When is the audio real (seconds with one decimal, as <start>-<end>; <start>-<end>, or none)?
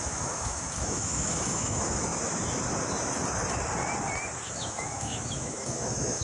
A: 2.1-4.5